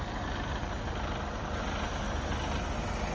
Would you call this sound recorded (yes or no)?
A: yes